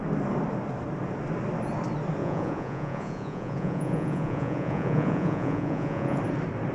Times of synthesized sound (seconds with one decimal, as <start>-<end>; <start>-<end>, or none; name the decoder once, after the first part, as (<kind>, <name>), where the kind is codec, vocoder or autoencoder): 2.2-6.2 (vocoder, Vocos)